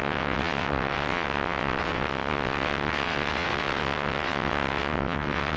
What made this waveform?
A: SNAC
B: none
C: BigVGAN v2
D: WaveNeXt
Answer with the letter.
D